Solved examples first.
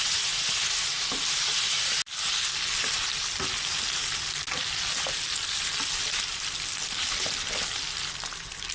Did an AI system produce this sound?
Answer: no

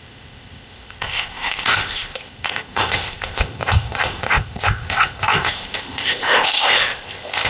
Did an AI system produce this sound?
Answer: yes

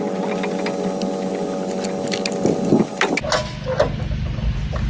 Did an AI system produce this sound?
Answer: no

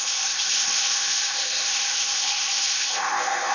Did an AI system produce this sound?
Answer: yes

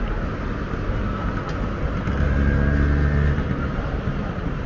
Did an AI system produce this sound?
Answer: no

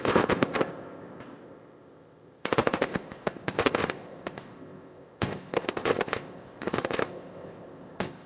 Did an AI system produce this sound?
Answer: yes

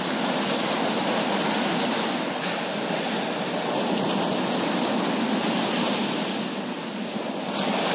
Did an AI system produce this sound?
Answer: no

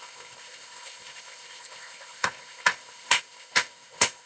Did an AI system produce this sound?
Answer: yes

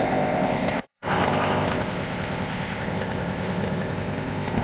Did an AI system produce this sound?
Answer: yes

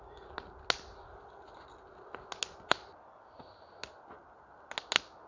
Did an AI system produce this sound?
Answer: no